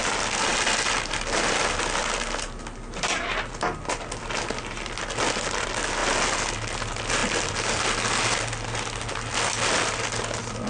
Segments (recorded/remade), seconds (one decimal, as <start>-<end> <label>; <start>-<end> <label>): 0.0-10.7 recorded